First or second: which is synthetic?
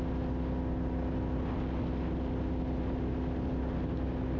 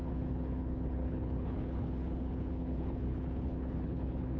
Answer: second